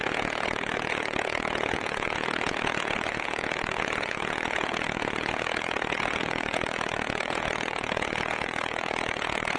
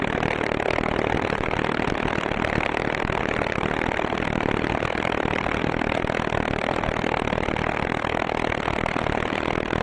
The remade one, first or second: first